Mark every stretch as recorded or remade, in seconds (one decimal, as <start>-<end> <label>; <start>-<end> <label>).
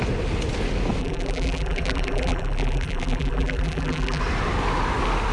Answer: 0.0-1.0 recorded; 1.0-4.2 remade; 4.2-5.3 recorded